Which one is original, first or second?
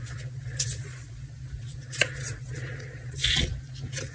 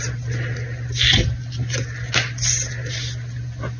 second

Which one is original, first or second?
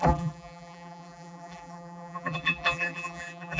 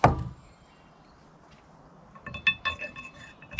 second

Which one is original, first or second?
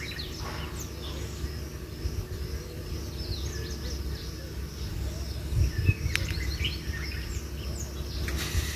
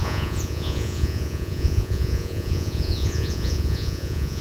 first